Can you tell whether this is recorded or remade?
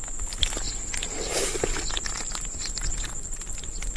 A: recorded